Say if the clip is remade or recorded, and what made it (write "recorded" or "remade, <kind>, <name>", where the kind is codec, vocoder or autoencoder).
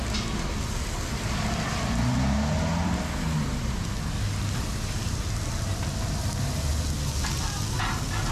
recorded